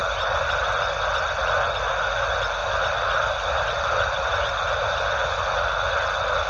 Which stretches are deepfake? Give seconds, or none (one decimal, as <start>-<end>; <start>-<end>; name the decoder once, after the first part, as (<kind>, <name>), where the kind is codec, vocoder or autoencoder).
0.0-0.7 (vocoder, BigVGAN v2); 2.6-4.9